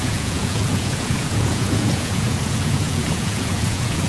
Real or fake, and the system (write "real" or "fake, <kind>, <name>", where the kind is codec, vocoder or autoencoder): fake, vocoder, Vocos